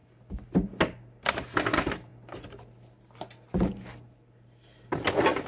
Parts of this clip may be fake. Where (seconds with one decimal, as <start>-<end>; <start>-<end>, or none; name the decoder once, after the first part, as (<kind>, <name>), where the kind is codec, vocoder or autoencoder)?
none